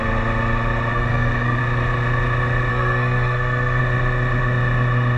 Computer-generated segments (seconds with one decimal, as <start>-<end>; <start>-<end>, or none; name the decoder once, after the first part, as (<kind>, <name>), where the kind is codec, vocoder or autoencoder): 0.9-1.6 (codec, SNAC); 2.7-3.8